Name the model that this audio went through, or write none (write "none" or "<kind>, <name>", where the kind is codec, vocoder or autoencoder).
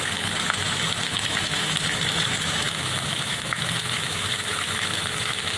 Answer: autoencoder, DAC-VAE